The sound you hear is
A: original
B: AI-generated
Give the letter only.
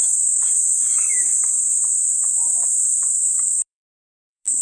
B